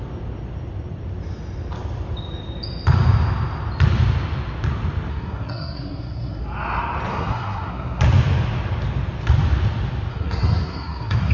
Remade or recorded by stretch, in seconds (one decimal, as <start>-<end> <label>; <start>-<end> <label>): 0.0-5.1 recorded; 5.1-6.4 remade; 6.4-7.1 recorded; 7.1-8.0 remade; 8.0-10.1 recorded; 10.1-11.3 remade